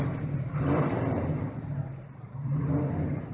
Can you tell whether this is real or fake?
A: real